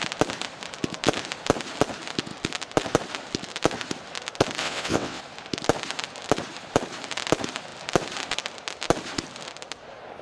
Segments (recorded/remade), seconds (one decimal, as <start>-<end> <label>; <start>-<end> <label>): 0.0-4.6 recorded; 4.6-5.2 remade; 5.2-10.2 recorded